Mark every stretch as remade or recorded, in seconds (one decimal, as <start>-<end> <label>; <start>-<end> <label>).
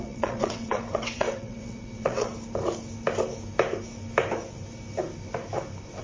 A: 0.0-2.3 remade; 2.3-6.0 recorded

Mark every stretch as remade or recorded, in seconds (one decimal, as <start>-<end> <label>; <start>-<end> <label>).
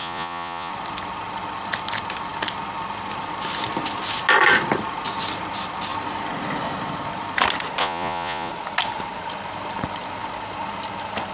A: 0.0-0.7 remade; 0.7-7.8 recorded; 7.8-8.5 remade; 8.5-11.3 recorded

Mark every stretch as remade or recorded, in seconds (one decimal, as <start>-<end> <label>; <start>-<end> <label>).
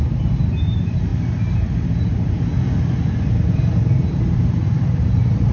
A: 0.0-1.1 remade; 1.1-4.1 recorded; 4.1-5.5 remade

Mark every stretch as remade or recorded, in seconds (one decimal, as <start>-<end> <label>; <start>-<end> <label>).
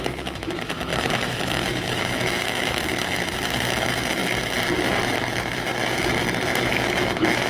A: 0.0-4.2 remade; 4.2-5.3 recorded; 5.3-5.7 remade; 5.7-6.7 recorded; 6.7-7.5 remade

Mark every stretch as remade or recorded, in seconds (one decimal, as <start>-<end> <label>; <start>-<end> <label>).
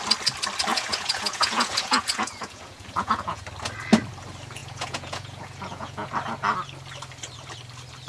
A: 0.0-0.7 recorded; 0.7-3.4 remade; 3.4-4.6 recorded; 4.6-6.1 remade; 6.1-8.1 recorded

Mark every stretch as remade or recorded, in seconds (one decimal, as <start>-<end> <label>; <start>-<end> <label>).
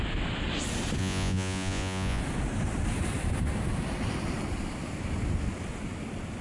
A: 0.0-1.0 recorded; 1.0-2.2 remade; 2.2-6.4 recorded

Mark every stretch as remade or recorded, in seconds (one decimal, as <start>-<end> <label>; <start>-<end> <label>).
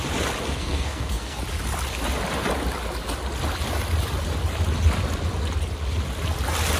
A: 0.0-0.5 recorded; 0.5-1.4 remade; 1.4-6.8 recorded